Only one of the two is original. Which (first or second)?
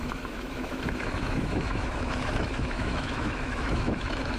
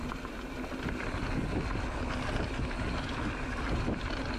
second